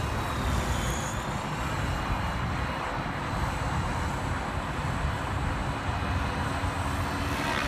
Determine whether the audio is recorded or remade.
recorded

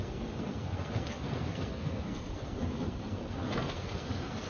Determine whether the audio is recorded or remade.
remade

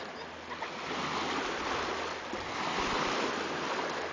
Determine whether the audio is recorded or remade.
recorded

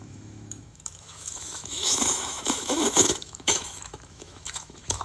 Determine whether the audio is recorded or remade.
remade